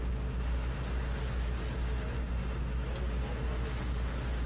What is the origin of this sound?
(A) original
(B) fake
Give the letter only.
A